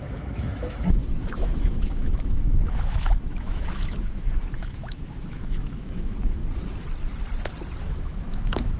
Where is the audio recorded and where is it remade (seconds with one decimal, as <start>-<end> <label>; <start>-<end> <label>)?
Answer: 0.0-6.4 remade; 6.4-7.8 recorded; 7.8-8.8 remade